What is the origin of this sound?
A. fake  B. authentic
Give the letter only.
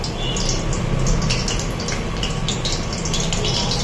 B